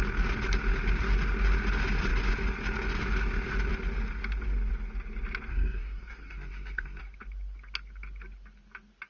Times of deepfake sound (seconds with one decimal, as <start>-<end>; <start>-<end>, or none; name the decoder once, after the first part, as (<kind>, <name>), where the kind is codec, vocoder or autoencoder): 5.5-7.0 (codec, SNAC)